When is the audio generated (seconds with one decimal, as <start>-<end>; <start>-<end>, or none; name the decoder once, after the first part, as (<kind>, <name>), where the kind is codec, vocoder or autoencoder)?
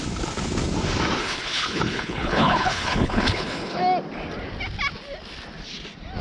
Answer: 1.2-3.8 (codec, HILCodec)